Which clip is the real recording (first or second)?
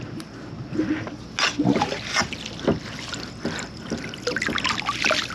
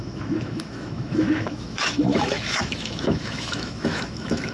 first